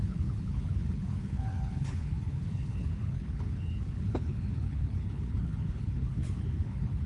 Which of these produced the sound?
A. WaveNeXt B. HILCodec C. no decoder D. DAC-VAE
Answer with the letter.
B